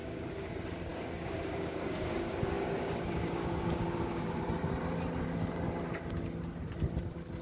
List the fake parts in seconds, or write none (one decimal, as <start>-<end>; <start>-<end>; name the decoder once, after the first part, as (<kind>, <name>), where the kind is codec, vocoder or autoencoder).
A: 0.0-0.5 (codec, DAC); 0.9-4.4